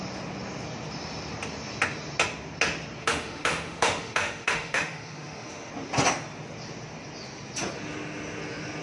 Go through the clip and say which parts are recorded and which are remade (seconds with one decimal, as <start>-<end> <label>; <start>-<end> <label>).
0.0-3.0 recorded; 3.0-5.7 remade; 5.7-8.8 recorded